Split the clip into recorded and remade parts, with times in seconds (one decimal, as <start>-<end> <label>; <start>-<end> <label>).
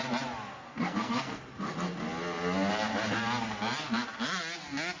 0.0-0.5 recorded; 0.5-1.4 remade; 1.4-5.0 recorded